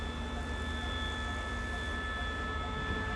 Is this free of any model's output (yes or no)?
yes